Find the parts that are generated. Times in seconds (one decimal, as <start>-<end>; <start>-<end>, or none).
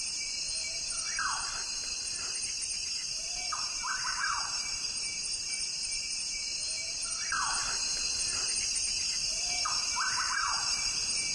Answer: 0.0-8.1; 10.3-11.3